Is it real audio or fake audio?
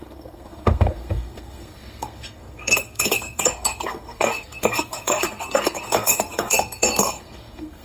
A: fake